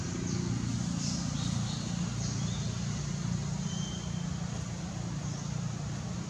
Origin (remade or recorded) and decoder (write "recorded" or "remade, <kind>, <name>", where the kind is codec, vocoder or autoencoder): recorded